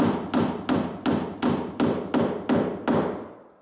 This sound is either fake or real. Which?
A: real